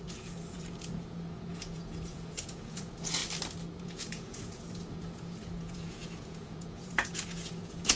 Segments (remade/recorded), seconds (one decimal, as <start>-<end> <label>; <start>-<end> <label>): 0.0-3.2 remade; 3.2-3.8 recorded; 3.8-8.0 remade